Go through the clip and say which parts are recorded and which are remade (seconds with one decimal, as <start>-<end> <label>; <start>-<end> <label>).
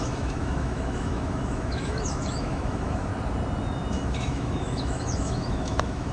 0.0-3.1 remade; 3.1-3.9 recorded; 3.9-6.1 remade